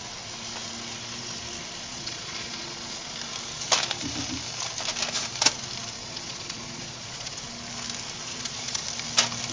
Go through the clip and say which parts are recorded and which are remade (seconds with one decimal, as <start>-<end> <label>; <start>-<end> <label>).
0.0-1.9 recorded; 1.9-3.1 remade; 3.1-6.0 recorded; 6.0-7.4 remade; 7.4-8.2 recorded; 8.2-8.8 remade; 8.8-9.5 recorded